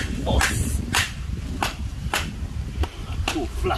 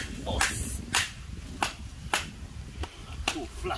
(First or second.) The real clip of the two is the second